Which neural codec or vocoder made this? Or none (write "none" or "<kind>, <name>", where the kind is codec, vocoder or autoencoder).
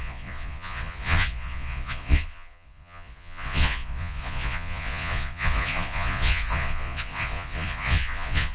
vocoder, Vocos